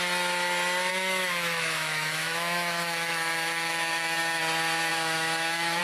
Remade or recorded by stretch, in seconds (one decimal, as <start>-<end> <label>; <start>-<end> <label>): 0.0-0.9 recorded; 0.9-4.4 remade; 4.4-4.9 recorded; 4.9-5.8 remade